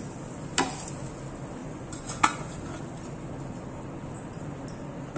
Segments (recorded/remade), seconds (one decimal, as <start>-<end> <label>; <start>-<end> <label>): 0.0-1.6 recorded; 1.6-2.5 remade; 2.5-5.2 recorded